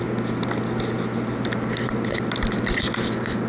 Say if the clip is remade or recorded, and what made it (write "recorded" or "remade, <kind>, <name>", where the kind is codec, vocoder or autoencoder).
recorded